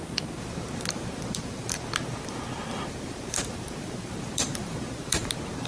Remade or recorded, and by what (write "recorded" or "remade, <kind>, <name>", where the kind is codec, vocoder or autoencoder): remade, vocoder, BigVGAN v2